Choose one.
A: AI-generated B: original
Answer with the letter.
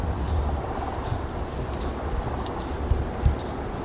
B